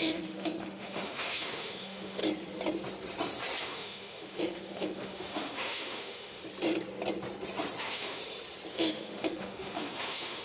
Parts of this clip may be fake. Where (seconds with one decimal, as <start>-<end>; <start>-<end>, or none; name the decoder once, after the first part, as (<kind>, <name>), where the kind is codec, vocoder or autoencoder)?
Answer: 0.0-2.2 (autoencoder, DAC-VAE); 3.6-6.4; 7.8-8.2; 8.7-10.4